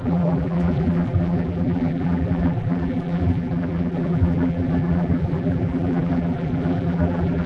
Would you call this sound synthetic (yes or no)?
yes